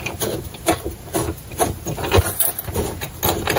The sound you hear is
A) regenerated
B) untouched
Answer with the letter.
A